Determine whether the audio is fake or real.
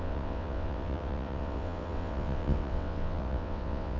fake